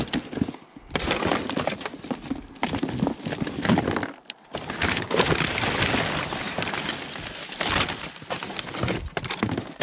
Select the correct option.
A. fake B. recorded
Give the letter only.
B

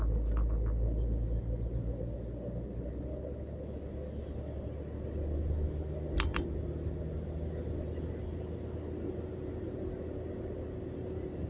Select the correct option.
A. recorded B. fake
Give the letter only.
A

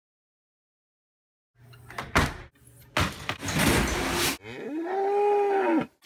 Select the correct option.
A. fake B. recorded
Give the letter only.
B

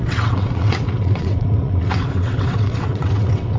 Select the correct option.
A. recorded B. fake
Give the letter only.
B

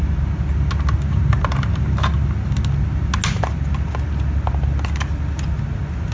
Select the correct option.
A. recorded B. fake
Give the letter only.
A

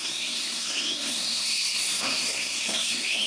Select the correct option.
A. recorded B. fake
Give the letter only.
B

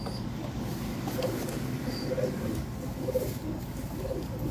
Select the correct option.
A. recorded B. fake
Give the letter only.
B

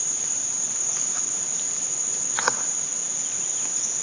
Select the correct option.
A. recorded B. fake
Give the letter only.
A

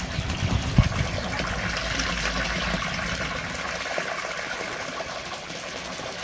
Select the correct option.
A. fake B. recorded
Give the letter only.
B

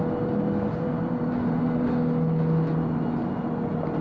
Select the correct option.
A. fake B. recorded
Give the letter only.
B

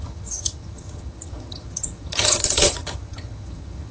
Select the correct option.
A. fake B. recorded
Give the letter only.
A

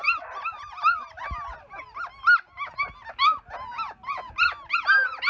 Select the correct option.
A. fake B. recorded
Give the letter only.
B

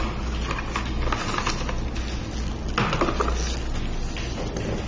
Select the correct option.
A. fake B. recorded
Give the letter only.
B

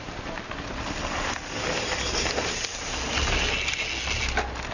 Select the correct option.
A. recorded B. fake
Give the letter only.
A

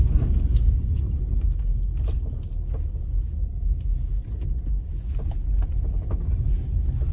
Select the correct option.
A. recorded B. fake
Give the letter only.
A